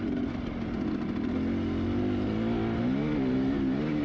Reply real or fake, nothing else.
real